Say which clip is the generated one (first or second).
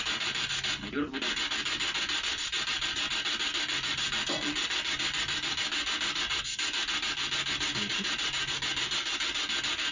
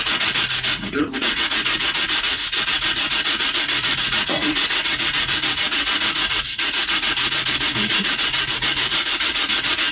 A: second